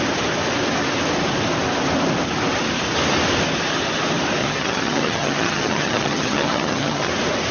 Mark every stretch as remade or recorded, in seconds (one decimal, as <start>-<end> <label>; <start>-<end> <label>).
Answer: 0.0-4.4 recorded; 4.4-7.1 remade; 7.1-7.5 recorded